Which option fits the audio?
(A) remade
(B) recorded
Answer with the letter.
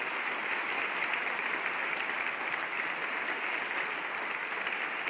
B